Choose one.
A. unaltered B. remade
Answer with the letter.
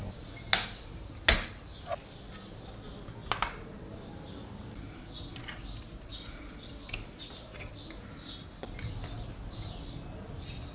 A